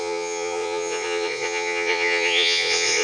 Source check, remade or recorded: remade